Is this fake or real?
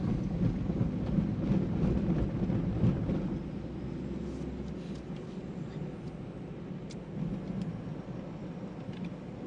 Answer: real